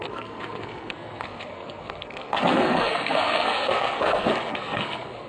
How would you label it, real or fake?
fake